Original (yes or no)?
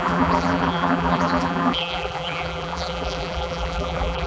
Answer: no